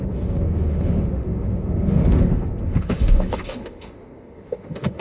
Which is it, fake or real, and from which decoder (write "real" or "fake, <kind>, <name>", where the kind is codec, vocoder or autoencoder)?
fake, autoencoder, DAC-VAE